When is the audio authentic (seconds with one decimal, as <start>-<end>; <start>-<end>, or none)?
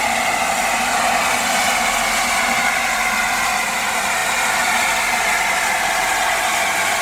0.0-7.0